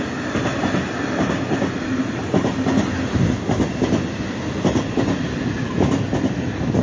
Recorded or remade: recorded